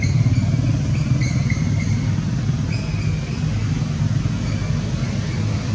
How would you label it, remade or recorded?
recorded